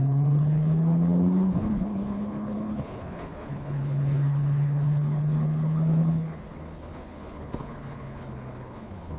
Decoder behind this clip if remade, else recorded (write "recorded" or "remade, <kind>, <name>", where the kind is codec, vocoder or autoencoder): remade, codec, HILCodec